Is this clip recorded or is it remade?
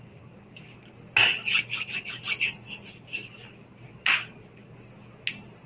recorded